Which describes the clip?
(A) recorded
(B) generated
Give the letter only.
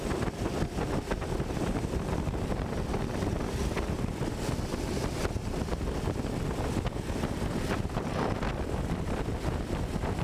A